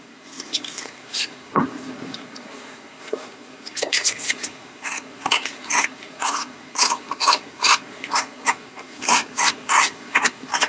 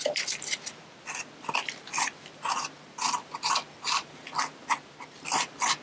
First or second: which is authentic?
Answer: second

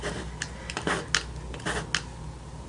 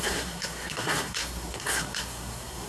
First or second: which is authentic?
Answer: first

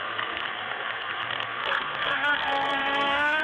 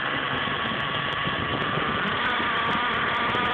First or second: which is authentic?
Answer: second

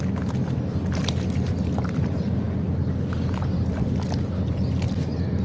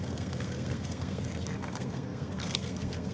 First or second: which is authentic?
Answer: first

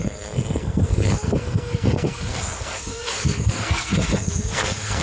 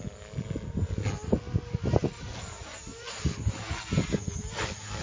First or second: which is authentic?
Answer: second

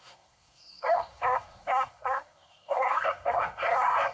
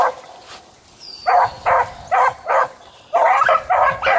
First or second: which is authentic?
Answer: second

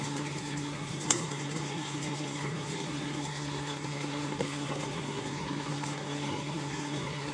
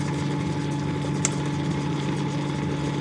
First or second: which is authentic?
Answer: second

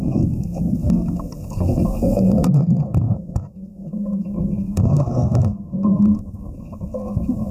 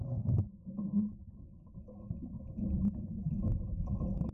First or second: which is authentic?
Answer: second